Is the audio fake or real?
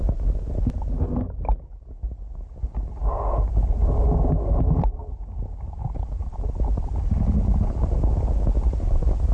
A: real